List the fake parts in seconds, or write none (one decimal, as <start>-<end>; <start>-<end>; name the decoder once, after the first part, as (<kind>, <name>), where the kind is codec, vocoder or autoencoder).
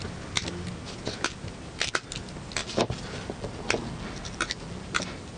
2.6-5.0 (vocoder, BigVGAN v2)